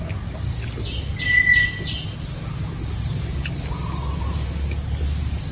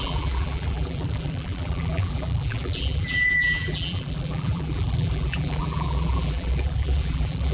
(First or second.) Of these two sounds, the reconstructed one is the second